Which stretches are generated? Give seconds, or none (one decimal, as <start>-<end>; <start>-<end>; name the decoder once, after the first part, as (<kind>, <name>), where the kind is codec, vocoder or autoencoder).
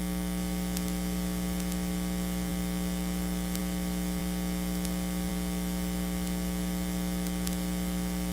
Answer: none